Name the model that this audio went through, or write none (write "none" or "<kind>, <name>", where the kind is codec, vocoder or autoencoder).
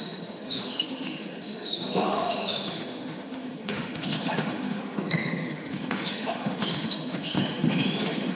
autoencoder, DAC-VAE